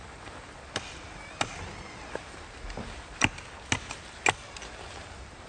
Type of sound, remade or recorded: recorded